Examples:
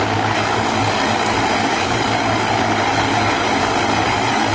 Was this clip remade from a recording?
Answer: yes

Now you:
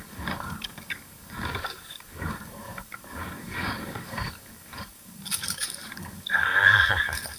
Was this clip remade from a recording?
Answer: yes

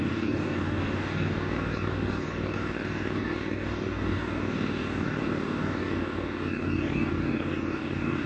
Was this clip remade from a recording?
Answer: yes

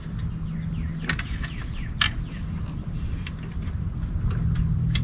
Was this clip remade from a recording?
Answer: no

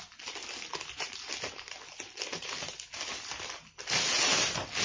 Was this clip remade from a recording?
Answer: no